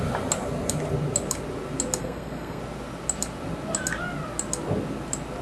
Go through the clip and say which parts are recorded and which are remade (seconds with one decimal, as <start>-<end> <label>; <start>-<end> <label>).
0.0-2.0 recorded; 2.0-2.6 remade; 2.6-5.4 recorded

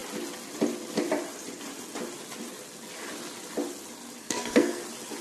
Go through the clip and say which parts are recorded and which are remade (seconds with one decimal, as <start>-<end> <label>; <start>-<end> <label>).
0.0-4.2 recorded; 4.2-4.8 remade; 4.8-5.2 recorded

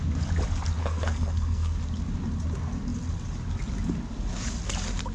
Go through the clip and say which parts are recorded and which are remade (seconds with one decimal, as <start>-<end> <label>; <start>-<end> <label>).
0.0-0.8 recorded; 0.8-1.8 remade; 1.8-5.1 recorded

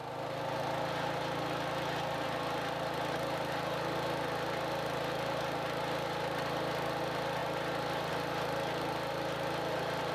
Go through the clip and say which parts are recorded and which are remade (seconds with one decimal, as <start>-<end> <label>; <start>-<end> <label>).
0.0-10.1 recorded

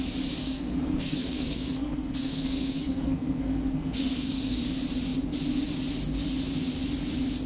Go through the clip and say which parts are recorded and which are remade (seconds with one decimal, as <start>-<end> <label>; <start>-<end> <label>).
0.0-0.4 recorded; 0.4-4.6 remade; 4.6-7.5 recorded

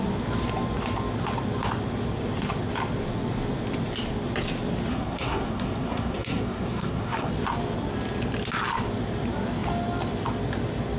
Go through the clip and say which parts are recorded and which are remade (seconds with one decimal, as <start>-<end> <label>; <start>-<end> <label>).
0.0-4.9 recorded; 4.9-7.3 remade; 7.3-11.0 recorded

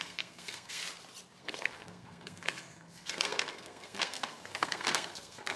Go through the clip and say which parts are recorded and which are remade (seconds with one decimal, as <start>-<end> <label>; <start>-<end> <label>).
0.0-0.8 remade; 0.8-1.4 recorded; 1.4-5.6 remade